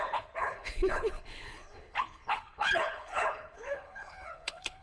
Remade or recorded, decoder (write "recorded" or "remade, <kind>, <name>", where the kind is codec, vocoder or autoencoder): remade, codec, HILCodec